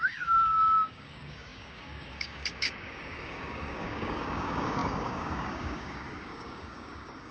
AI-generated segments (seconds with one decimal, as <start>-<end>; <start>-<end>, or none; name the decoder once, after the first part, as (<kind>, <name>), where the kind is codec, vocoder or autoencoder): 0.0-7.3 (codec, DAC)